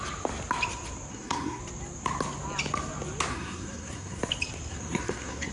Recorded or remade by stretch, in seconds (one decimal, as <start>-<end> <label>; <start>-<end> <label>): 0.0-1.1 recorded; 1.1-1.6 remade; 1.6-3.3 recorded; 3.3-4.2 remade; 4.2-4.7 recorded; 4.7-5.5 remade